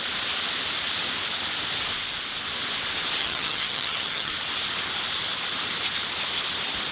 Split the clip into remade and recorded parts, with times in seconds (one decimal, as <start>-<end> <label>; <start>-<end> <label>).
0.0-3.2 recorded; 3.2-4.3 remade; 4.3-6.9 recorded